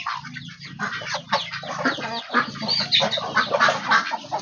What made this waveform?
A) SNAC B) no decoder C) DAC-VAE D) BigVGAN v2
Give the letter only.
B